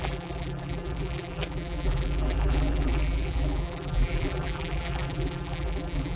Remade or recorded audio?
remade